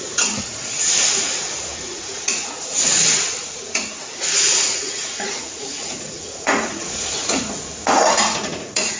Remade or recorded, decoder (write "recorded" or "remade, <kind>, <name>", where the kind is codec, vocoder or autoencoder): remade, vocoder, Vocos